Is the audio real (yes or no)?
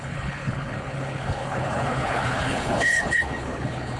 no